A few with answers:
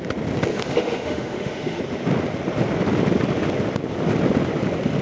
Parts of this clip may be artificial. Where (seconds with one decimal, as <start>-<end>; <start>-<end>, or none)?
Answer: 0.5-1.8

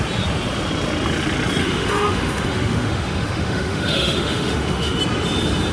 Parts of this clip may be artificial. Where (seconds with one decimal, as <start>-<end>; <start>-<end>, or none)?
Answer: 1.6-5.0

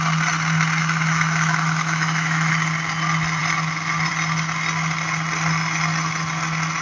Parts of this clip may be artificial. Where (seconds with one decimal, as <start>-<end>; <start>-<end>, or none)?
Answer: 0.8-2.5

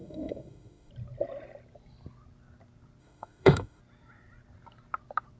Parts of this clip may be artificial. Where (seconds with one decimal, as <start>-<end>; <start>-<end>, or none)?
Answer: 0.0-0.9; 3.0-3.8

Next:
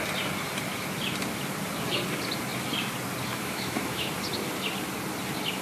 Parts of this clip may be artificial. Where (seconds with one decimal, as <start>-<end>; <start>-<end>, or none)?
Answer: 3.3-4.1